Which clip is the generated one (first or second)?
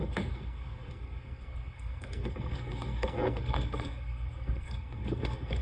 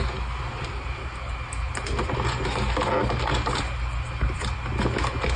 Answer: first